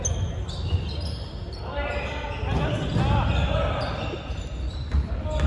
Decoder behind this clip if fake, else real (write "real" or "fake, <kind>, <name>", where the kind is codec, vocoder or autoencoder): real